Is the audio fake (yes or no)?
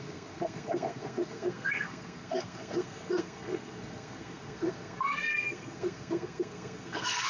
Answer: yes